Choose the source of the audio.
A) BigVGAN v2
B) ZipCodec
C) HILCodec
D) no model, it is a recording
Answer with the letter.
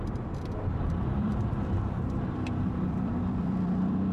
A